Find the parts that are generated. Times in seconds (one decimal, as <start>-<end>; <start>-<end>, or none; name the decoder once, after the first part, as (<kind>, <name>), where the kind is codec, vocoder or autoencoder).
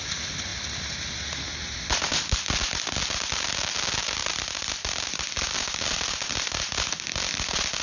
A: none